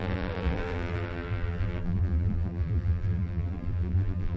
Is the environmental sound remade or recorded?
remade